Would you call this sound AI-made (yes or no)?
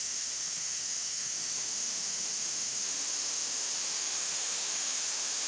yes